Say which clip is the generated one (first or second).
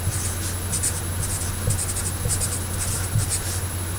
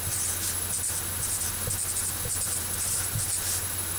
second